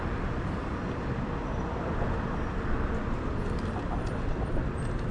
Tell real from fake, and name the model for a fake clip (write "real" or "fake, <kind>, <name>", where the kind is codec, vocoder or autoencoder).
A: real